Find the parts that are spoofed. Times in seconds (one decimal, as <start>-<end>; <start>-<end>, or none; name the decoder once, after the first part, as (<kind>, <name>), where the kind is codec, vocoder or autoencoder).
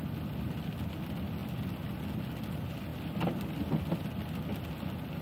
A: none